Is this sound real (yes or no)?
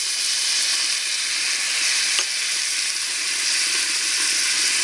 yes